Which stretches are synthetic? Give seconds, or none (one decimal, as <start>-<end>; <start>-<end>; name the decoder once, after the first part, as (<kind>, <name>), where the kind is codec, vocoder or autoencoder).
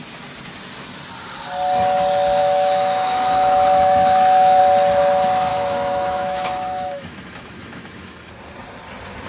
2.4-4.6 (autoencoder, DAC-VAE); 5.5-8.3